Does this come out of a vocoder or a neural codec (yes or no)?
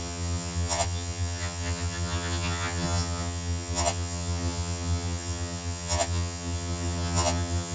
yes